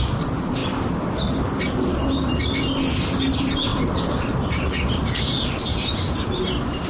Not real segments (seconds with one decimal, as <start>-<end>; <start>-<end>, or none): 3.7-5.9